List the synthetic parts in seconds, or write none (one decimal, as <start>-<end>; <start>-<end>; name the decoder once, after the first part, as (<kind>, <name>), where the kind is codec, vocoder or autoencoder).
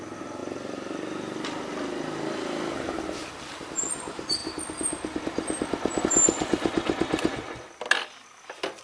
none